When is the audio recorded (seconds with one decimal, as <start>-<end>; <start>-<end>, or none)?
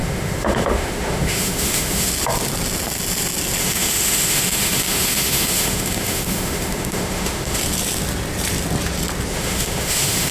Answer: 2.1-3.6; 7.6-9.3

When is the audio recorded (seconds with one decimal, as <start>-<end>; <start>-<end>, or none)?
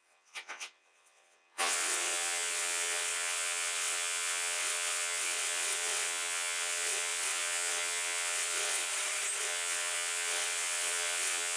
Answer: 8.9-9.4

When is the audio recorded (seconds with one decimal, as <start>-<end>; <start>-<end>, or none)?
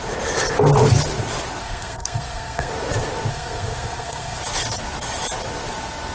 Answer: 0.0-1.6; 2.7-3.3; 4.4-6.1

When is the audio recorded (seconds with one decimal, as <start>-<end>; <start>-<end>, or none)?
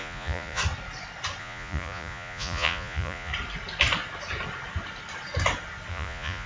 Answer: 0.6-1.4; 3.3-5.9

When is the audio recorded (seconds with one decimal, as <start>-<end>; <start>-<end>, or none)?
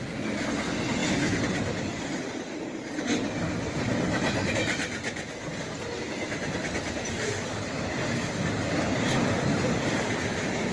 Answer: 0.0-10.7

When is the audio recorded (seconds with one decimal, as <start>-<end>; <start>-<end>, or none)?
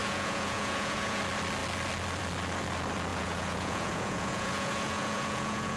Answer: 1.2-3.1